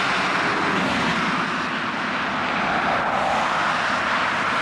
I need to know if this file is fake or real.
real